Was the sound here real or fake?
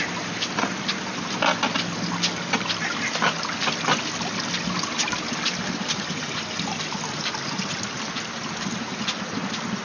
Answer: real